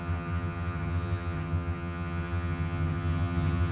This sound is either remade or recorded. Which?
remade